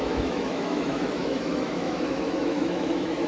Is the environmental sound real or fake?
fake